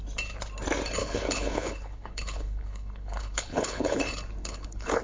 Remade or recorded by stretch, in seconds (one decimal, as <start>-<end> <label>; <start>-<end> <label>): 0.0-1.0 recorded; 1.0-4.0 remade; 4.0-4.4 recorded; 4.4-5.0 remade